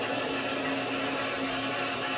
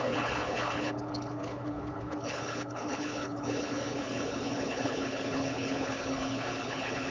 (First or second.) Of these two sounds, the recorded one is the first